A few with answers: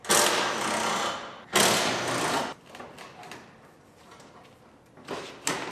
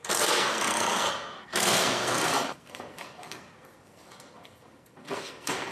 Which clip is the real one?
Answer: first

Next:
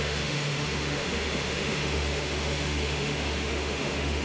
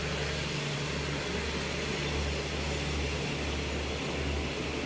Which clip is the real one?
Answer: second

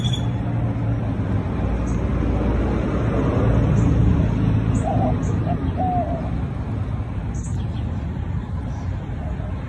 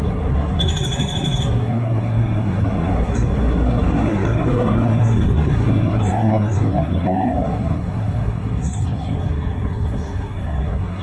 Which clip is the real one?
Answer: first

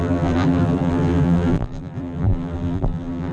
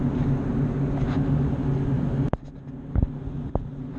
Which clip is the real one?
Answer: second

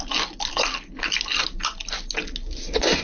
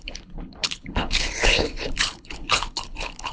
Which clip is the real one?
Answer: first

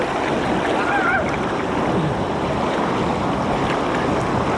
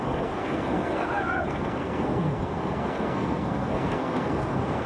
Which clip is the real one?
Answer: first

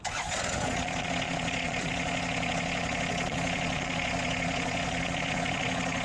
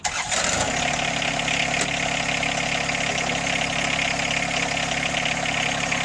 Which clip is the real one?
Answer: second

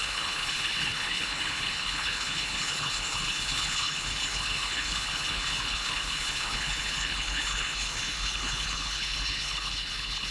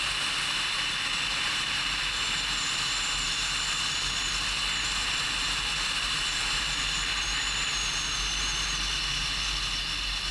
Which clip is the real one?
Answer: second